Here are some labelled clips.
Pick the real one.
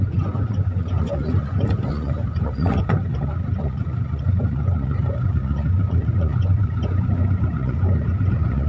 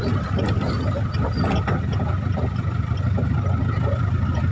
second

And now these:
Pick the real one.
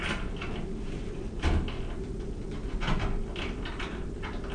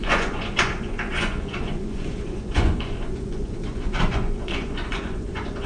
first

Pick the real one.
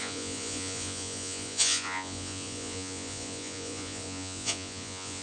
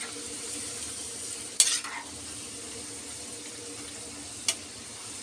second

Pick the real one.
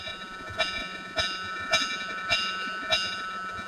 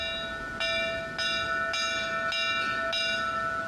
second